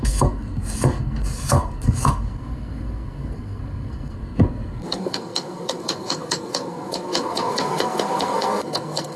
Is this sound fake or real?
fake